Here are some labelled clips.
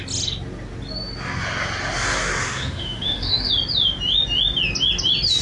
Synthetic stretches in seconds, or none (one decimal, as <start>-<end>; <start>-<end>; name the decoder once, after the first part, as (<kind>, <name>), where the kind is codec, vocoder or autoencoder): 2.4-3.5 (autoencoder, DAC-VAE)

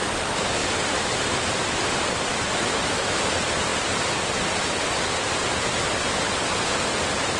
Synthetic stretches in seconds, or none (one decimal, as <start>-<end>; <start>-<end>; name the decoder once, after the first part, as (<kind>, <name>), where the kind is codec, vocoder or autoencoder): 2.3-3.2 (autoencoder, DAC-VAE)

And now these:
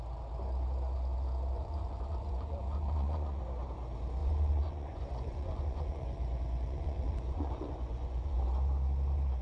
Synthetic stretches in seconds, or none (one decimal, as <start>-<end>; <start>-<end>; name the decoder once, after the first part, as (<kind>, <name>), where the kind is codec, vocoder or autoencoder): 1.5-3.4 (vocoder, Vocos); 4.2-8.4

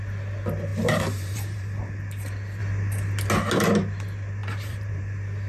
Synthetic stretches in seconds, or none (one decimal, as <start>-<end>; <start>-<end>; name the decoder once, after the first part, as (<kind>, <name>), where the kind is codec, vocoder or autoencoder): 0.7-1.8 (vocoder, BigVGAN v2); 4.4-5.0